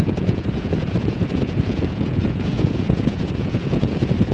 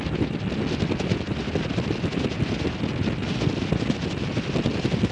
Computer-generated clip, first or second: first